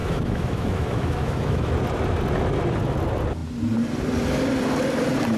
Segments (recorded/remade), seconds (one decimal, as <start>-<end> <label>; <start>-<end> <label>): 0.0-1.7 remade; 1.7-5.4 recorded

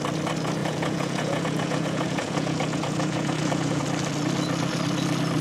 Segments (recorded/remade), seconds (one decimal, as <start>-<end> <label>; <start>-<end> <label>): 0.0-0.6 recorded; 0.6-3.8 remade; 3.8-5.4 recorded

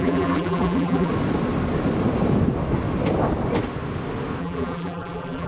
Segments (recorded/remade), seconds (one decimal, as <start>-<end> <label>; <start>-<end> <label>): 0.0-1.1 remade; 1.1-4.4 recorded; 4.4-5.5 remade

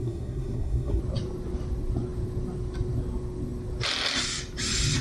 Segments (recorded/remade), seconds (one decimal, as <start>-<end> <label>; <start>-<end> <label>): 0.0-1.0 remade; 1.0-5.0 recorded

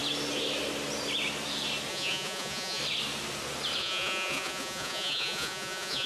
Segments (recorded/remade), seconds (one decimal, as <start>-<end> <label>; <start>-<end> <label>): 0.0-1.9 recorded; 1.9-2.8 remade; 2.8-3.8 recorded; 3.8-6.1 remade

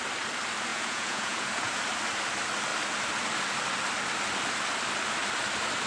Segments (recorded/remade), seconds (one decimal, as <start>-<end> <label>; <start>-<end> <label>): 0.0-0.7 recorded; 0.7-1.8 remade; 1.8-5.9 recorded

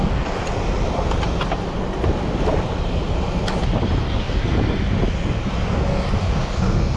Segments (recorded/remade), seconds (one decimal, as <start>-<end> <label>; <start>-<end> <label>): 0.0-0.4 remade; 0.4-4.0 recorded; 4.0-4.4 remade; 4.4-6.1 recorded; 6.1-7.0 remade